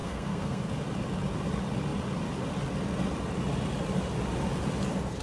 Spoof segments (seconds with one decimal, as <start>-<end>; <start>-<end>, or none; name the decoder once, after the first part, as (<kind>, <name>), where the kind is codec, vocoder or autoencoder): 0.0-0.6 (codec, SNAC)